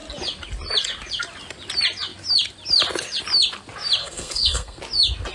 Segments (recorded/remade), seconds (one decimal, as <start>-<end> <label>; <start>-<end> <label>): 0.0-4.0 recorded; 4.0-4.8 remade; 4.8-5.3 recorded